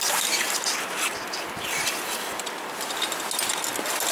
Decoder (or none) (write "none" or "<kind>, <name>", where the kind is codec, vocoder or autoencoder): none